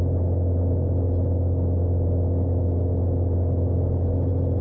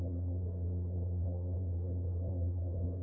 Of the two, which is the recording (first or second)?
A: first